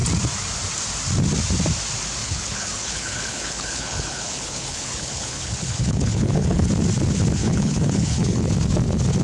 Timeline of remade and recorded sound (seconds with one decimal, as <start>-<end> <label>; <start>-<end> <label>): 0.0-2.2 recorded; 2.2-6.7 remade; 6.7-7.4 recorded; 7.4-8.4 remade; 8.4-9.2 recorded